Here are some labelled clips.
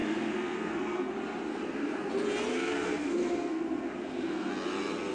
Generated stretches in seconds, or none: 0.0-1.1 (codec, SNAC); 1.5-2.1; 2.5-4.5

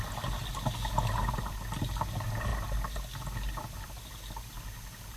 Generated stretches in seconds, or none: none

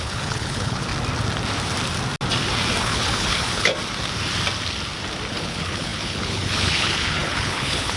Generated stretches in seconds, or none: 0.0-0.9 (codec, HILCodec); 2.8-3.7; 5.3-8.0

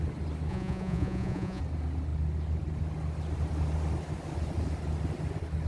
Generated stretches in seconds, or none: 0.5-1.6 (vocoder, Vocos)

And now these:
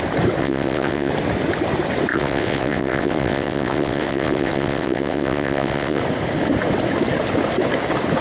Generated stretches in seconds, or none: 0.4-1.1 (vocoder, WaveNeXt); 2.1-6.0

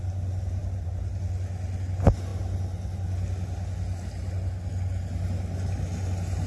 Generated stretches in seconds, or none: 0.6-1.2 (vocoder, BigVGAN v2)